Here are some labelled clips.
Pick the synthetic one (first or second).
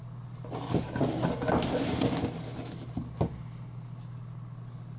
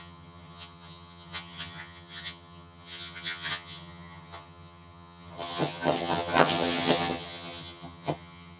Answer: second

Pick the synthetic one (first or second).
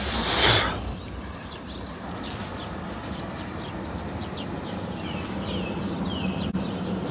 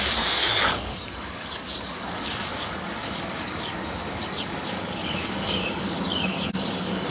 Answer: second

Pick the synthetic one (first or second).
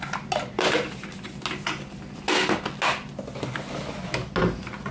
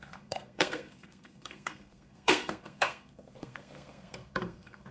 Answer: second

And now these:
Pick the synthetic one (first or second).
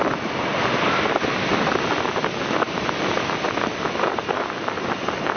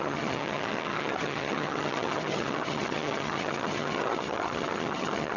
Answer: second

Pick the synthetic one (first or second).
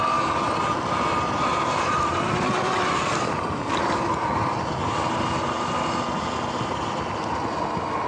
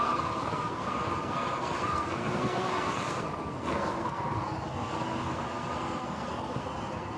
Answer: second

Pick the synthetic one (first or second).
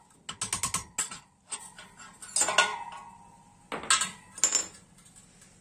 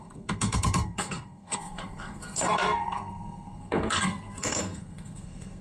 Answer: second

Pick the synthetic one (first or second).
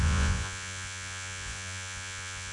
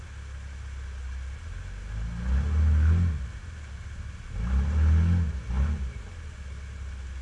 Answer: first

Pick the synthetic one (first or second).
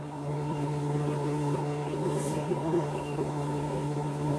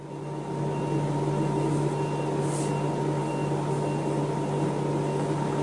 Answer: first